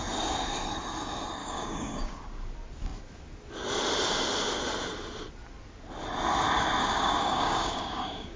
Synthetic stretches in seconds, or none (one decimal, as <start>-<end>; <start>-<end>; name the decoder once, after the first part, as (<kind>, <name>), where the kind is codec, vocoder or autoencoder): 1.4-2.2 (codec, DAC); 6.8-8.4